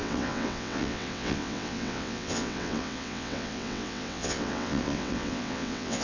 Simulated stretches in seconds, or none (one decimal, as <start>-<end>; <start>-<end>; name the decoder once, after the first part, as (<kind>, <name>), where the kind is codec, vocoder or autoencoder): 0.0-6.0 (vocoder, WaveNeXt)